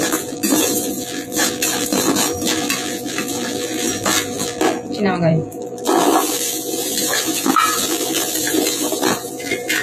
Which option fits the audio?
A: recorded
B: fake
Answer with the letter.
B